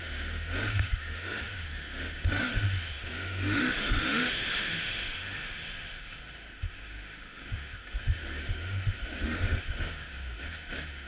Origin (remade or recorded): remade